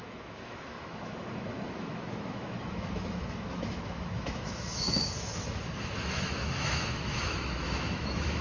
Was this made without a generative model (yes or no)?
no